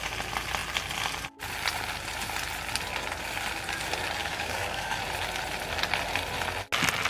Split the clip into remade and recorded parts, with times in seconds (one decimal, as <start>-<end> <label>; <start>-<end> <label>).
0.0-4.2 recorded; 4.2-5.0 remade; 5.0-7.1 recorded